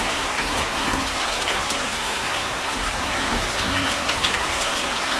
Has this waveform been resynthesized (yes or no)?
yes